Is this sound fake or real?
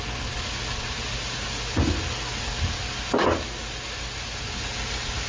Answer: real